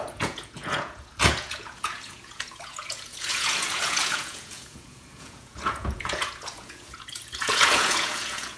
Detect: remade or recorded remade